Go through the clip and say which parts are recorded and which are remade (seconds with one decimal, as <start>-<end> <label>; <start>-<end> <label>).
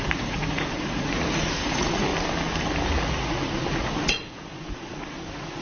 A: 0.0-2.1 remade; 2.1-3.0 recorded; 3.0-5.6 remade